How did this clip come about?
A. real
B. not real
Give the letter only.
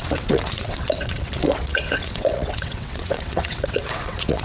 B